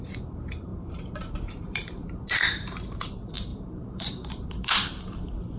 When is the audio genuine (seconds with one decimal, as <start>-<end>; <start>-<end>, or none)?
2.0-3.1